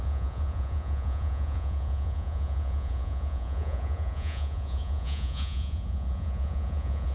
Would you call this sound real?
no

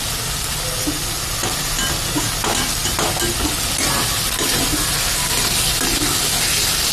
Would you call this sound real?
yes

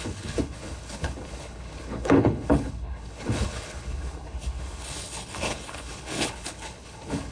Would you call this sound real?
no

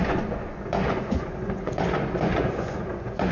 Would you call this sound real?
no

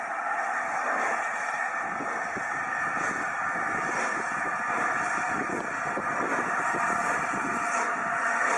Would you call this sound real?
yes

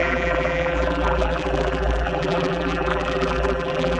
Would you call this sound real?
no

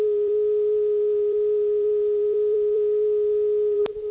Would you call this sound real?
no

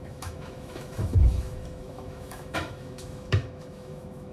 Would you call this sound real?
no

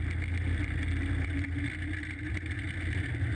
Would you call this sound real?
yes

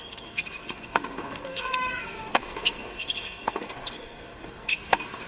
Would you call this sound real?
no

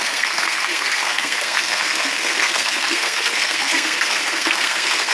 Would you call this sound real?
no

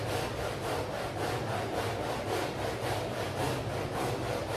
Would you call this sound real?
yes